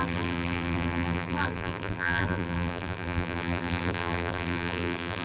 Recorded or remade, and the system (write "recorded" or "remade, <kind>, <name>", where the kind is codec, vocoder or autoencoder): remade, vocoder, BigVGAN v2